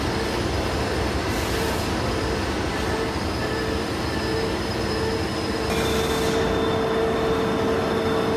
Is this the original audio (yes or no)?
yes